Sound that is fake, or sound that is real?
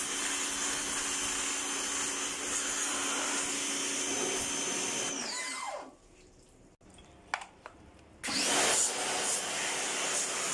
real